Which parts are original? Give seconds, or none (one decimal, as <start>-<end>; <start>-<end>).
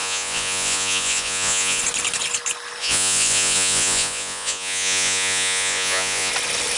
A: 1.8-2.8; 6.3-6.8